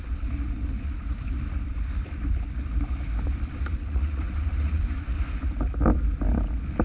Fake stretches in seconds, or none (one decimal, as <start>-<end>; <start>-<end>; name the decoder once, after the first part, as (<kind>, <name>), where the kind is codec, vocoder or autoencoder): 3.6-4.8 (vocoder, Vocos)